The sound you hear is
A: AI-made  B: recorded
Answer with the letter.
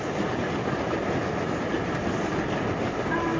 B